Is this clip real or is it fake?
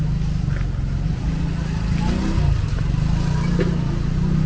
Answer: real